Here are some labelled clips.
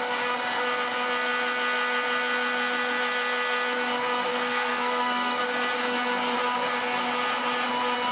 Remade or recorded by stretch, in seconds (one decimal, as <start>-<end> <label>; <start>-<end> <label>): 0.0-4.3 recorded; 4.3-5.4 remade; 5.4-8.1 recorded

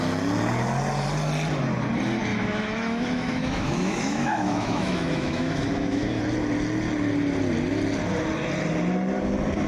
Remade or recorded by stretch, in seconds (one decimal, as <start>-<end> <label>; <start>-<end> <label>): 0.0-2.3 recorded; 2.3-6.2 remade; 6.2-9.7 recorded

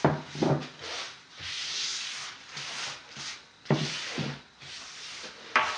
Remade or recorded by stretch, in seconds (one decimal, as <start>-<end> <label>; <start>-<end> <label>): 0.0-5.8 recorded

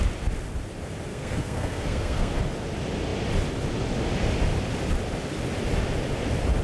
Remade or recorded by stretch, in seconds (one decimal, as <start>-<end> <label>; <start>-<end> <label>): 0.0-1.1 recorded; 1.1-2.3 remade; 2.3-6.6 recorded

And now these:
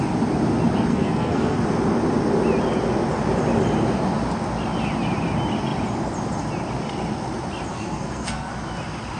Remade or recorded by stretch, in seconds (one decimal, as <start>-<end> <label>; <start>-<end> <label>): 0.0-0.9 recorded; 0.9-1.6 remade; 1.6-7.7 recorded; 7.7-8.5 remade; 8.5-9.2 recorded

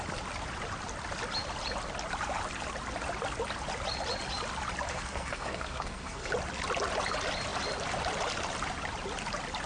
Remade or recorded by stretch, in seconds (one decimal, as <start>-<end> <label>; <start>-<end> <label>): 0.0-4.9 recorded; 4.9-6.3 remade; 6.3-9.7 recorded